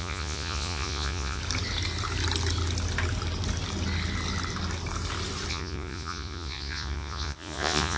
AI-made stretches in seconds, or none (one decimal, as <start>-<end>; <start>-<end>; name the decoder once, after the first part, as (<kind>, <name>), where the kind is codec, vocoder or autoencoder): 0.0-1.4 (vocoder, Vocos); 5.5-8.0